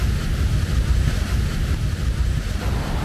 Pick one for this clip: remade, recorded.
recorded